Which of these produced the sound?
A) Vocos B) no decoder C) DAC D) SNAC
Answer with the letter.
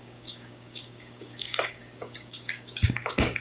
C